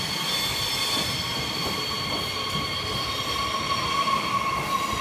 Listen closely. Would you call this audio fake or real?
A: real